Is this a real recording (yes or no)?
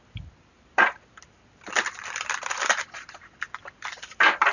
yes